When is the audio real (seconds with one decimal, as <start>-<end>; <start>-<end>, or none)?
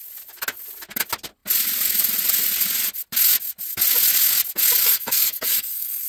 0.0-4.8